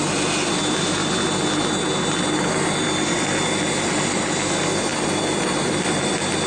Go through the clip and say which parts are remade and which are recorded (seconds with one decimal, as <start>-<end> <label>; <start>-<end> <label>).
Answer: 0.0-4.9 recorded; 4.9-6.5 remade